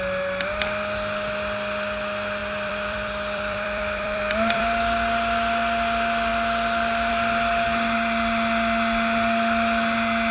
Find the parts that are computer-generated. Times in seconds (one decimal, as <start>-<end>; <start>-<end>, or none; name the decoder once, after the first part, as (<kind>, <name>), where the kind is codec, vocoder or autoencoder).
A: 2.4-4.8 (vocoder, BigVGAN v2)

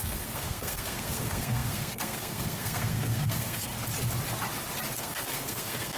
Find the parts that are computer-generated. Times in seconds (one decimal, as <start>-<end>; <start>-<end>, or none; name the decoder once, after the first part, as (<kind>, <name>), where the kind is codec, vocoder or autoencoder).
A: 0.0-3.7 (codec, SNAC); 5.0-6.0

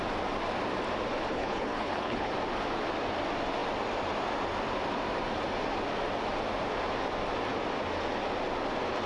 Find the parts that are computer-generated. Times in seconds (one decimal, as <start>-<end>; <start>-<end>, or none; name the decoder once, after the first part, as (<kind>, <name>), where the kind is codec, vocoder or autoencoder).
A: 1.3-2.3 (codec, HILCodec)

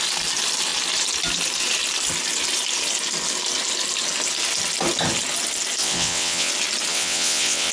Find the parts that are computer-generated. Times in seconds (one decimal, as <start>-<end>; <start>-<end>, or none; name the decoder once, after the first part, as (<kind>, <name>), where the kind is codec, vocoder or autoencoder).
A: 5.8-6.5 (vocoder, WaveNeXt); 6.9-7.7

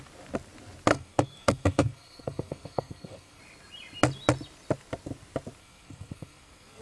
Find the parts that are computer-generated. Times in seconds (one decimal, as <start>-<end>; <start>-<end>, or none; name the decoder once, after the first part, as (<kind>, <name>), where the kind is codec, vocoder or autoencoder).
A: 0.9-3.4 (codec, SNAC); 5.6-6.8

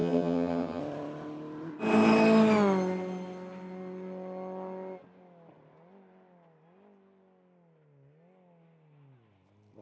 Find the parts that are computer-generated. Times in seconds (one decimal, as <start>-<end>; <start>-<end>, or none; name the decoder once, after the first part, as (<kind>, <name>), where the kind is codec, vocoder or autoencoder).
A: 0.0-0.8 (vocoder, HiFi-GAN)